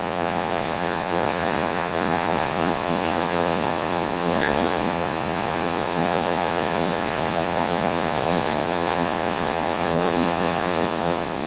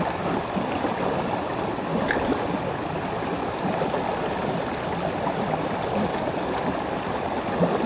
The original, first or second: second